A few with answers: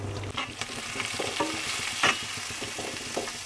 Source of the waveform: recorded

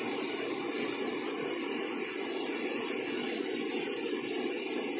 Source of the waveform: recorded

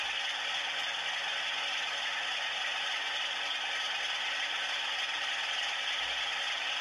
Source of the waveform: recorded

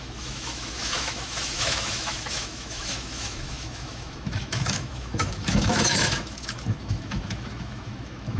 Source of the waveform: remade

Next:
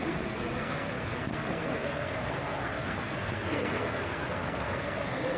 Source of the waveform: remade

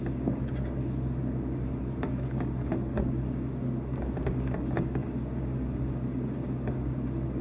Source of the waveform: remade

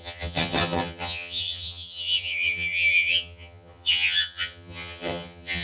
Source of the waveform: remade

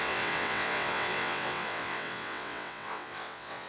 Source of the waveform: remade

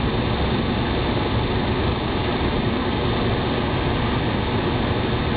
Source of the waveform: recorded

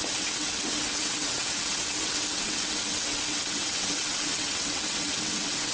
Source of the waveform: remade